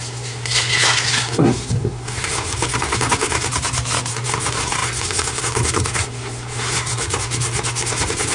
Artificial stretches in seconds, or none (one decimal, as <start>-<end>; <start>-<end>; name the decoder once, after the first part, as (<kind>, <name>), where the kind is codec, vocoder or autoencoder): 0.0-3.5 (codec, SNAC); 4.1-8.3